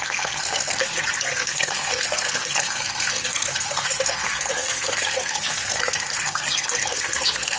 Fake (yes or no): yes